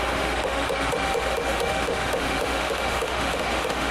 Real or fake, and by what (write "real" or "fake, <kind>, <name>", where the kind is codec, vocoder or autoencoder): fake, autoencoder, DAC-VAE